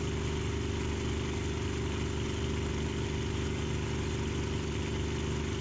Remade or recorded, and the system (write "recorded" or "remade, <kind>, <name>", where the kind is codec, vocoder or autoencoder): recorded